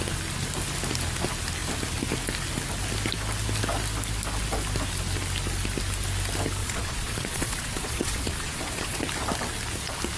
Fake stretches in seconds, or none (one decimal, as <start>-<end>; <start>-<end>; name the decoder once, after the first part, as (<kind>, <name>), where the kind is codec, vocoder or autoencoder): 6.6-9.0 (vocoder, Vocos)